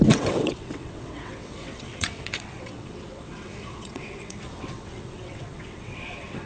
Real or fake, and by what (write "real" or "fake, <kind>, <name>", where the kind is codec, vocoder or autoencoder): fake, vocoder, WaveNeXt